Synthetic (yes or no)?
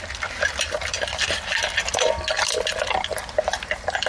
no